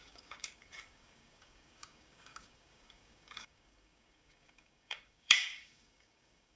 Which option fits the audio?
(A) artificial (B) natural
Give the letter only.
A